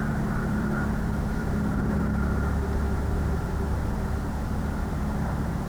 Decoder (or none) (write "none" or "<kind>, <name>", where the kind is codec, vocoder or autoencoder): vocoder, BigVGAN v2